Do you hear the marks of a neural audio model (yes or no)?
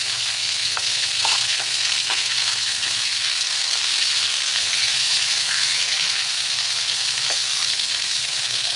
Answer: yes